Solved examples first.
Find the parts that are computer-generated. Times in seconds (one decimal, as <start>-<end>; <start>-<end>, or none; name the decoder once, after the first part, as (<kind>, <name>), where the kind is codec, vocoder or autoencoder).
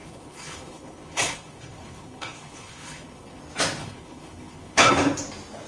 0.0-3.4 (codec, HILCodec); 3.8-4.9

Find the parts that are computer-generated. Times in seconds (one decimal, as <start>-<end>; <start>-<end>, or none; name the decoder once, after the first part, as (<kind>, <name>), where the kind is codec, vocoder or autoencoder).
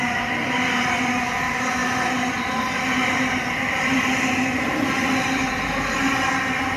none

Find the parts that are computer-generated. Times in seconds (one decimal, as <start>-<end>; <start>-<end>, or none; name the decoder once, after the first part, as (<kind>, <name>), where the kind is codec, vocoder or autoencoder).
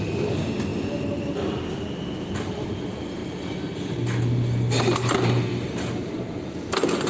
none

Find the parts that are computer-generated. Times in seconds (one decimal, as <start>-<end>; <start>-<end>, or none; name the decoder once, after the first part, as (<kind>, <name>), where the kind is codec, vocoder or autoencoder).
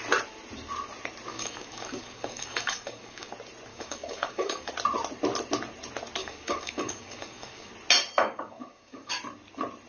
1.3-3.3 (codec, DAC); 3.7-4.7; 6.2-7.7; 8.2-9.2